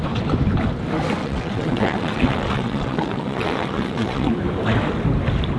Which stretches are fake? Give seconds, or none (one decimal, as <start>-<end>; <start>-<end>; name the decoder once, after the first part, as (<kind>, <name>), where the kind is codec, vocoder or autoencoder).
1.2-4.3 (vocoder, WaveNeXt)